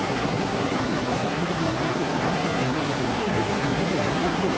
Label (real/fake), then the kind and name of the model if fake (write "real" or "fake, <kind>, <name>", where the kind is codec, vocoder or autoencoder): fake, codec, SNAC